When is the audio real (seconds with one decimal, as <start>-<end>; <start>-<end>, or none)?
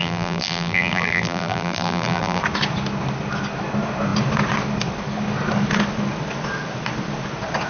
2.4-7.7